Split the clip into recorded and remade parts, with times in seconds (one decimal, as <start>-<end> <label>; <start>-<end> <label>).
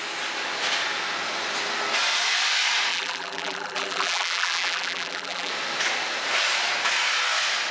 0.0-2.9 recorded; 2.9-5.5 remade; 5.5-7.7 recorded